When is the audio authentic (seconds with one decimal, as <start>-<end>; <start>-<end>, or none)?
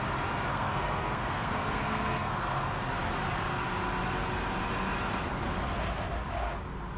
0.0-0.5; 2.9-7.0